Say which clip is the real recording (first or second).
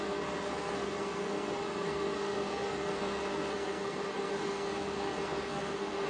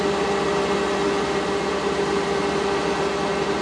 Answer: second